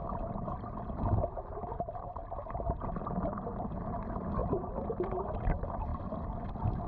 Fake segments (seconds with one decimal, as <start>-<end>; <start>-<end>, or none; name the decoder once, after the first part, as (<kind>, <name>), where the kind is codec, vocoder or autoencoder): 0.0-2.1 (vocoder, BigVGAN v2); 4.4-5.4